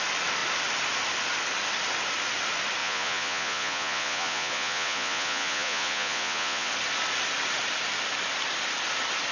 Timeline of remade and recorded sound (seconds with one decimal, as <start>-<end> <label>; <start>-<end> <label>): 0.0-2.8 recorded; 2.8-6.7 remade; 6.7-9.3 recorded